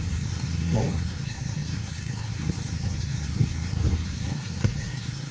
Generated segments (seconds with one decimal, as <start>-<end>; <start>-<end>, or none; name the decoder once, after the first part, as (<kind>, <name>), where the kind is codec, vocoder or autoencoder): 0.0-5.3 (codec, SNAC)